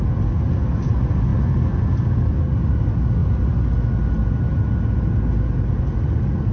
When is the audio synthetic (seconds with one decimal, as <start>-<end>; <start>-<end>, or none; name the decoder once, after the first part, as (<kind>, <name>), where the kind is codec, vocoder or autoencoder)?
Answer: none